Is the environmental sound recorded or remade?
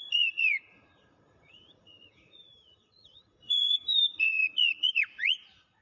remade